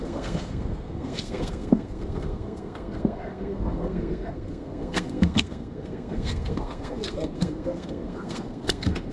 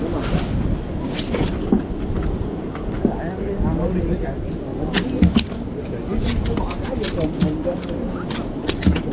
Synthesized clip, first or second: first